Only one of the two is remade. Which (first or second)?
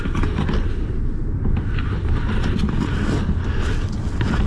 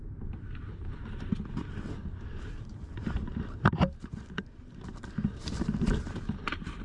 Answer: second